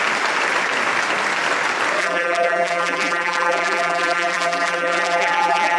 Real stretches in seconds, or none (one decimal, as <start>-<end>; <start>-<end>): 0.0-2.0